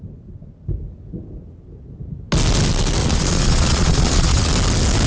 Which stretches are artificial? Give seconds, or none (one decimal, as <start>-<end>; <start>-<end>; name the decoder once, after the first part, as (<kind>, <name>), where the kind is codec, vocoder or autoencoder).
3.0-4.5 (vocoder, Vocos)